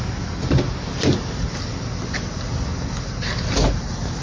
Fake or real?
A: real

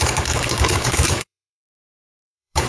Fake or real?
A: fake